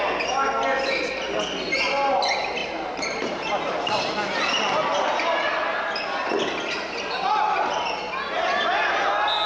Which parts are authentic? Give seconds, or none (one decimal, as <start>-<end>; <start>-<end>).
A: 0.0-2.6; 3.5-9.5